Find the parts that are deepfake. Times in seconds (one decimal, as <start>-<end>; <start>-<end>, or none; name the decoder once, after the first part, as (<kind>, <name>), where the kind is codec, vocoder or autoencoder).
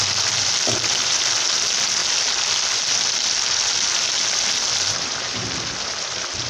none